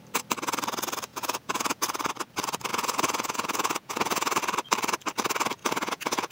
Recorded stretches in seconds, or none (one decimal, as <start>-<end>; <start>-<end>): 0.0-1.1; 1.8-2.7; 4.4-5.6